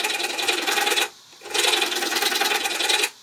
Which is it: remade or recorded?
remade